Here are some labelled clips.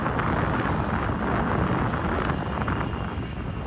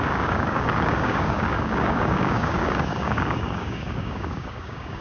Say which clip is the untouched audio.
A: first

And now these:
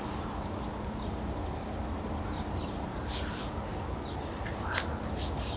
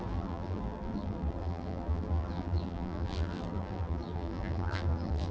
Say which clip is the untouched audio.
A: first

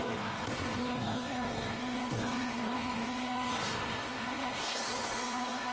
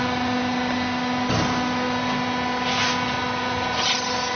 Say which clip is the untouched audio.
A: second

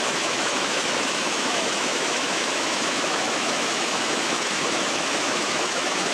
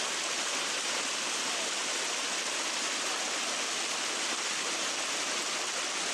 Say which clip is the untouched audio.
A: second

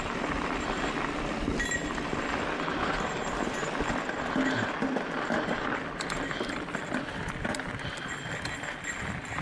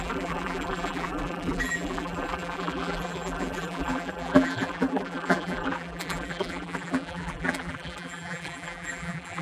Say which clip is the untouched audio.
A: first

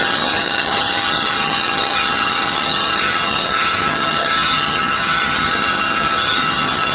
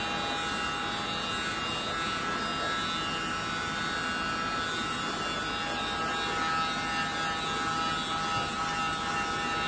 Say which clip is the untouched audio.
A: second